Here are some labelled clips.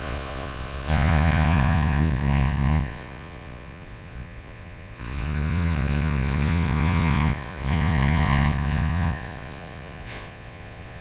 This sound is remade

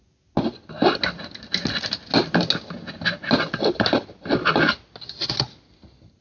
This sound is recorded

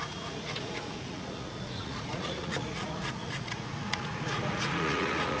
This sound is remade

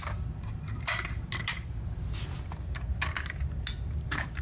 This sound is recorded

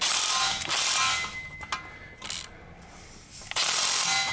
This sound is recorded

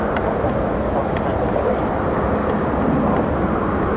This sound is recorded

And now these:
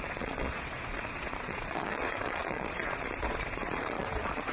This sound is remade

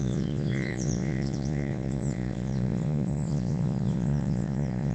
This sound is remade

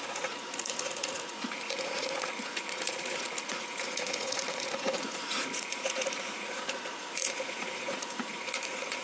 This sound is remade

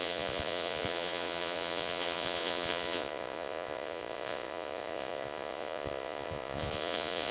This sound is remade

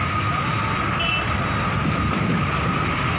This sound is recorded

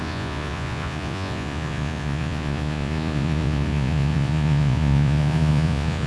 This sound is remade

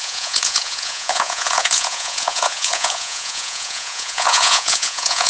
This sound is remade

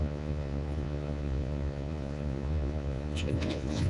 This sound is remade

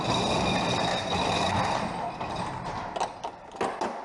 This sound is recorded